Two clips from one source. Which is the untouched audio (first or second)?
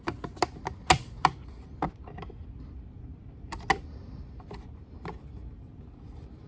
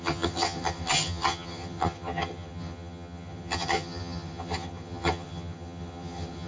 first